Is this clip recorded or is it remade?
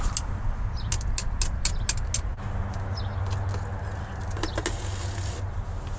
recorded